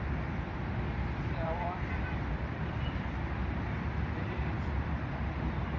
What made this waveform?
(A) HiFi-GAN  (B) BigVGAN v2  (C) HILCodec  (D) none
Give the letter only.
B